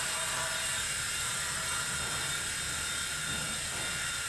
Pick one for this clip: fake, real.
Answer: real